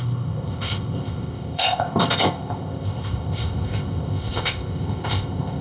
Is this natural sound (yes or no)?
no